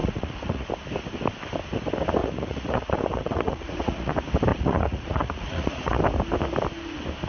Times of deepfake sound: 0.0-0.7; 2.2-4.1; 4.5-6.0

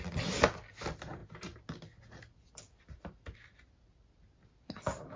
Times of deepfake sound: none

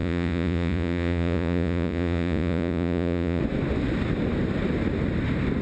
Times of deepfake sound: 0.0-3.4

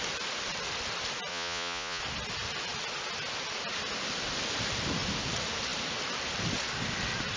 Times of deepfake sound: 1.3-2.0

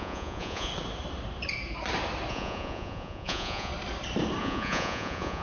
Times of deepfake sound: 0.0-0.7; 2.3-3.7; 4.4-5.4